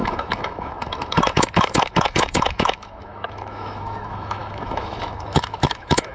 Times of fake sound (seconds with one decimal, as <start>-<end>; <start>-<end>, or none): 0.0-6.1